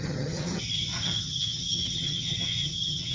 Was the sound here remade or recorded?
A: remade